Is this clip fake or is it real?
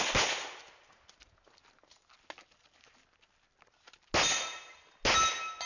real